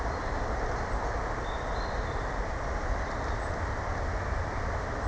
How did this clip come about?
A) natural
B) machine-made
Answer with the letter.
A